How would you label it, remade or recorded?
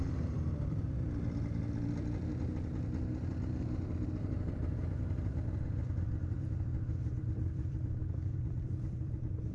remade